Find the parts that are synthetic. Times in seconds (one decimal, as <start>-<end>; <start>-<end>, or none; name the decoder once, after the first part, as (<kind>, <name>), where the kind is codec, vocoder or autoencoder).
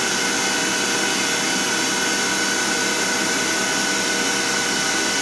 2.8-3.4 (vocoder, BigVGAN v2)